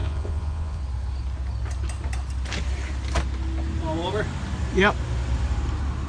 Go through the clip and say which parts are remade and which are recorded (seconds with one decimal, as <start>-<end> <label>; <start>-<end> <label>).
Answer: 0.0-0.8 remade; 0.8-6.1 recorded